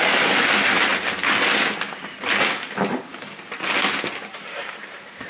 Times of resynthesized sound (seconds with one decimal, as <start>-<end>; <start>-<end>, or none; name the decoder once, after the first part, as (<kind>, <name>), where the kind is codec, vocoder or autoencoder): none